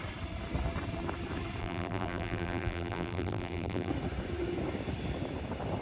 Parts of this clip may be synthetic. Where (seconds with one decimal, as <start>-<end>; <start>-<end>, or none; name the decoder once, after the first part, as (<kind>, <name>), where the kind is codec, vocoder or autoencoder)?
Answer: 1.6-3.9 (vocoder, BigVGAN v2)